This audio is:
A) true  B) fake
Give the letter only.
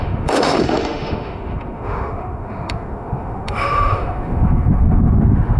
B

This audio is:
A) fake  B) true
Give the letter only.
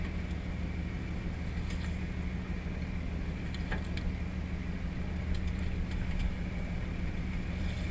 B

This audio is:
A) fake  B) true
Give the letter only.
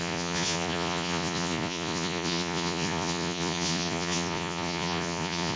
A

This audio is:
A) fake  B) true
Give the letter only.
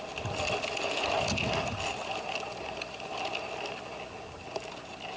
B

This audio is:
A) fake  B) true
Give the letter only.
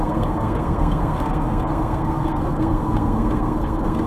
A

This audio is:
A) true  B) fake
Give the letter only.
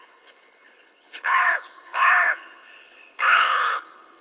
B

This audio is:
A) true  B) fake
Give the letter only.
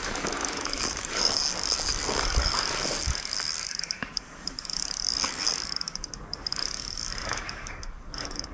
B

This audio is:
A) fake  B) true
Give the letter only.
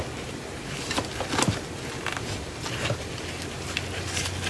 B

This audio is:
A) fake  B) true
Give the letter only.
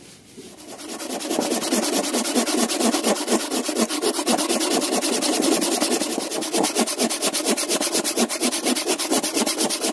B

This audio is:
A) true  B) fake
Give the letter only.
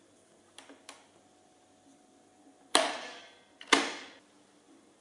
A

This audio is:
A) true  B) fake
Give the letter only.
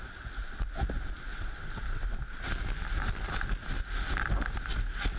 A